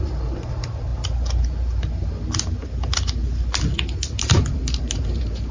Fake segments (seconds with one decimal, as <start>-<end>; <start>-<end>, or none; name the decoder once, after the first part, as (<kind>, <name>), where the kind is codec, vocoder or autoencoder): 0.0-0.9 (vocoder, BigVGAN v2); 4.2-5.5